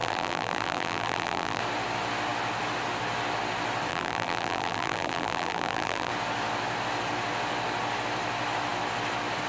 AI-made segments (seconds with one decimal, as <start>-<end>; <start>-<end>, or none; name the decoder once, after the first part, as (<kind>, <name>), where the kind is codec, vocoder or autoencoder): 0.0-1.6 (vocoder, BigVGAN v2); 3.9-6.1

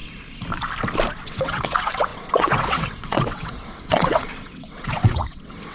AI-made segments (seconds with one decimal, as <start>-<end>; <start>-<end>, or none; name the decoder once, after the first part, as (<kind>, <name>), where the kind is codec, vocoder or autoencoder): 1.1-5.7 (vocoder, WaveNeXt)